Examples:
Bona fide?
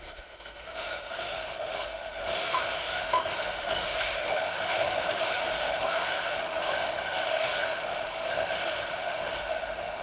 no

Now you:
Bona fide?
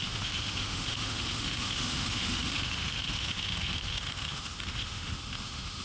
no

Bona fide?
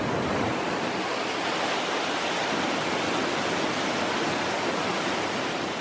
yes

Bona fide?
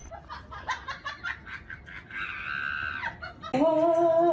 yes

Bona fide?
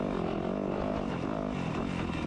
yes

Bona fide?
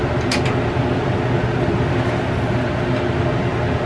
yes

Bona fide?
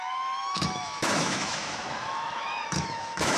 no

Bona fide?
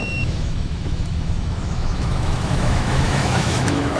no